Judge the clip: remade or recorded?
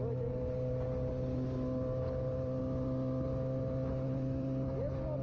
recorded